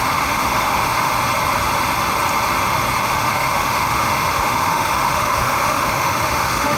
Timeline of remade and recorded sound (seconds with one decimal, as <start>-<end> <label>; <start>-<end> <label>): 0.0-1.1 remade; 1.1-3.0 recorded; 3.0-6.8 remade